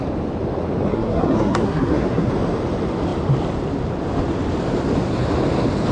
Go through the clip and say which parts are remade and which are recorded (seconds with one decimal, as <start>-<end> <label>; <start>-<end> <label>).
0.0-0.9 recorded; 0.9-2.3 remade; 2.3-5.9 recorded